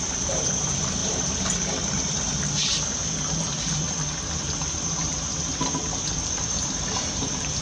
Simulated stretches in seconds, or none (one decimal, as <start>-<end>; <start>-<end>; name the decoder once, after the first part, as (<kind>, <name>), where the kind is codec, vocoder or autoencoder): 0.0-3.0 (vocoder, BigVGAN v2); 6.1-7.6